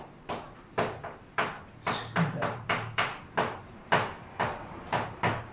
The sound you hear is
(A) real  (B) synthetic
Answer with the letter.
B